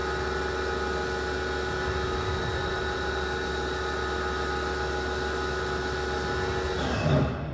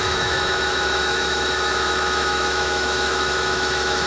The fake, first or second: second